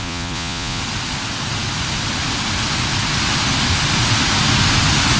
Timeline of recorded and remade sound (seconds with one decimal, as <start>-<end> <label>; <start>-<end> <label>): 0.0-0.8 remade; 0.8-5.2 recorded